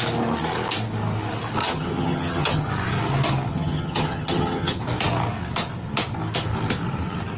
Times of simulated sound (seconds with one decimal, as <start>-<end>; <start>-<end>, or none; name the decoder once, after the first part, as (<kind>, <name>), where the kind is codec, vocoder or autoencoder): 1.6-2.7 (vocoder, HiFi-GAN); 3.5-4.8